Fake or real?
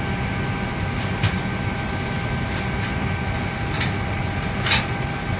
real